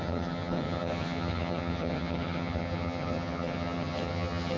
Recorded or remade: remade